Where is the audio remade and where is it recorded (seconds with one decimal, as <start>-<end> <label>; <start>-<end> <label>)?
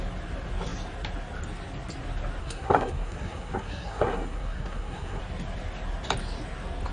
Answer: 0.0-2.4 recorded; 2.4-5.2 remade; 5.2-6.9 recorded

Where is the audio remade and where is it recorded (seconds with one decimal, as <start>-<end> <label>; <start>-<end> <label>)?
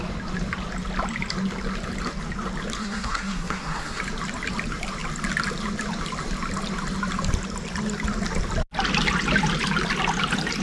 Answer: 0.0-2.8 recorded; 2.8-4.0 remade; 4.0-10.6 recorded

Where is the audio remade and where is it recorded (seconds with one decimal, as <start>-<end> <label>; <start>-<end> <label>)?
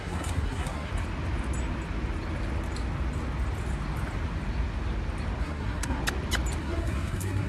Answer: 0.0-0.9 remade; 0.9-5.4 recorded; 5.4-6.0 remade; 6.0-6.6 recorded; 6.6-7.5 remade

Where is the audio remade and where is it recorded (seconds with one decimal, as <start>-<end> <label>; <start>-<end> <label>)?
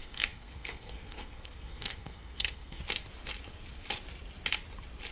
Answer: 0.0-2.8 remade; 2.8-5.1 recorded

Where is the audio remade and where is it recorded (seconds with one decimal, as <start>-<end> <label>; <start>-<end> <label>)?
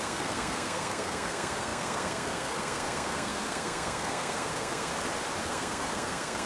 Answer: 0.0-4.9 remade; 4.9-5.4 recorded; 5.4-6.5 remade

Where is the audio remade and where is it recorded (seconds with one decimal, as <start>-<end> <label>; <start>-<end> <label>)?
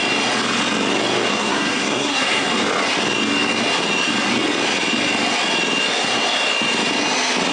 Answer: 0.0-1.3 recorded; 1.3-2.5 remade; 2.5-7.5 recorded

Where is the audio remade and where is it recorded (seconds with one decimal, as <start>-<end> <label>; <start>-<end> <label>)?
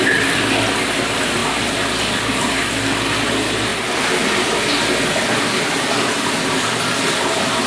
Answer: 0.0-7.7 recorded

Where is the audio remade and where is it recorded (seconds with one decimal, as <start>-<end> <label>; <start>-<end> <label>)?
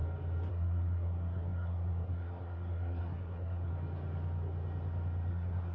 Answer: 0.0-0.5 recorded; 0.5-3.7 remade; 3.7-5.3 recorded; 5.3-5.7 remade